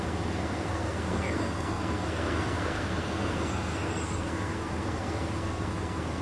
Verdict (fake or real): fake